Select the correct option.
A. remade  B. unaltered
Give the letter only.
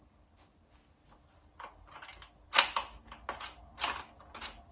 B